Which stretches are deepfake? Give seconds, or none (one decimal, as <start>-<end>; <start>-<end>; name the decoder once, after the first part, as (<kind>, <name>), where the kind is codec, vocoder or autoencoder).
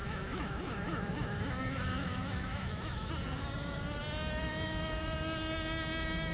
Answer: 0.0-3.1 (autoencoder, DAC-VAE)